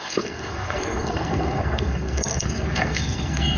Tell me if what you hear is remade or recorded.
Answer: remade